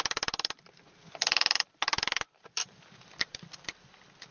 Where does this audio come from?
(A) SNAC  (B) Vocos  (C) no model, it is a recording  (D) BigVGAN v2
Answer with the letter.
C